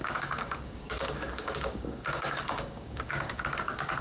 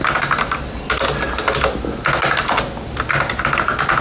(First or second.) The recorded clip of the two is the second